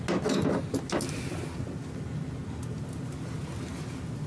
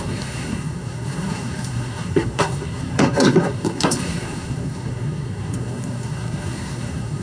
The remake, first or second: second